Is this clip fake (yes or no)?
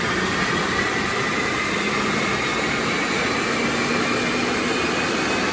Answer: no